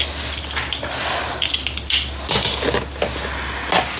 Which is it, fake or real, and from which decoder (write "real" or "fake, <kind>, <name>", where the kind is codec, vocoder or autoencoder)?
real